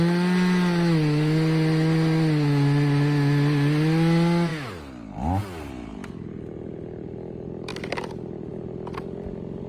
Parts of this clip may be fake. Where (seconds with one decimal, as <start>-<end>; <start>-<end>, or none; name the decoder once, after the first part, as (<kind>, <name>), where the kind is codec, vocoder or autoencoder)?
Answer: none